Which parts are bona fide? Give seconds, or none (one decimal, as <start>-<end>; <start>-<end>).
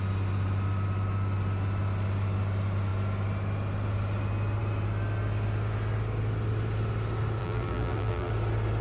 0.0-7.4; 8.3-8.8